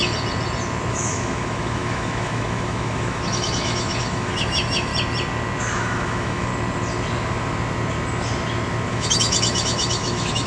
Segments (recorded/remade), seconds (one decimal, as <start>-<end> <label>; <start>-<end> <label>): 0.0-0.9 recorded; 0.9-4.9 remade; 4.9-5.6 recorded; 5.6-6.5 remade; 6.5-8.9 recorded; 8.9-10.5 remade